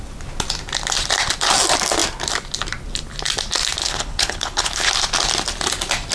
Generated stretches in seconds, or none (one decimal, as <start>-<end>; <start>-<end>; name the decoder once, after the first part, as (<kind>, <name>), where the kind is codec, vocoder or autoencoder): 3.8-4.9 (codec, HILCodec)